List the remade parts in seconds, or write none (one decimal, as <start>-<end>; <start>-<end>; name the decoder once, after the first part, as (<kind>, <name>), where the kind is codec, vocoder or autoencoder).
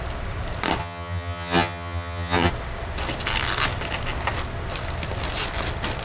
0.8-2.5 (vocoder, HiFi-GAN)